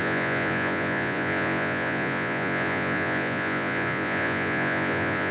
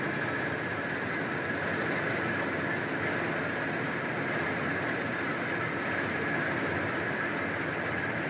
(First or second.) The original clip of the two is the second